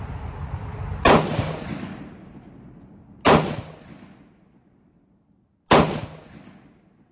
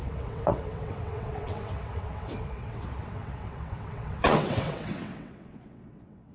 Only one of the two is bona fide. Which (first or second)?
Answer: first